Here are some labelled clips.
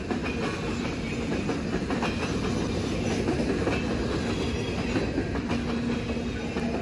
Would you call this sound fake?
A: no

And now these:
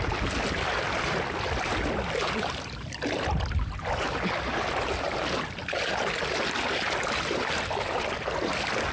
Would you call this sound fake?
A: no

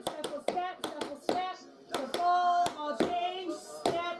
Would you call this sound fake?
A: no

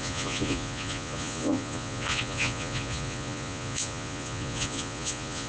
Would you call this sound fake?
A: yes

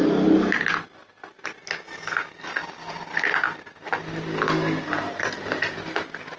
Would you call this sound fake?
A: no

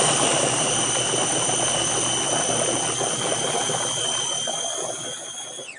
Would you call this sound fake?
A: no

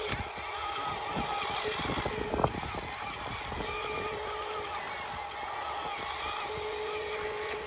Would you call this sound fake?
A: no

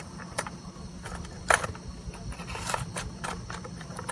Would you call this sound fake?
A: yes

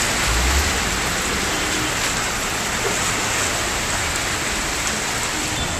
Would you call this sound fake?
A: no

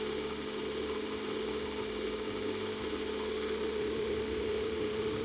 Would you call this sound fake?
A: no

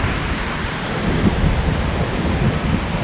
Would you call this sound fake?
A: no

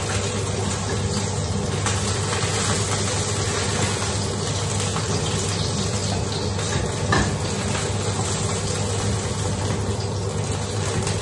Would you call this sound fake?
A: no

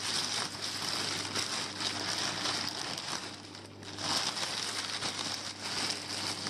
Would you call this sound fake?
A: no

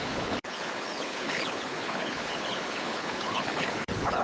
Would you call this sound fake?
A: yes